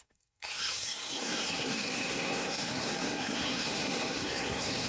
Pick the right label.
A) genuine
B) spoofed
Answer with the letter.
B